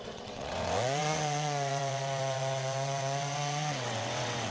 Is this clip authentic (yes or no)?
no